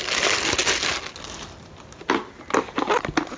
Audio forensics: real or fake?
real